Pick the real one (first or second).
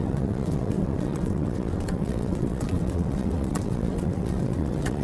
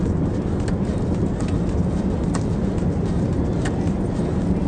second